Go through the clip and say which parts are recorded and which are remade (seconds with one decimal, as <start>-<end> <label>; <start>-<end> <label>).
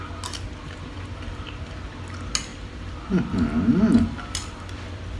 0.0-5.2 recorded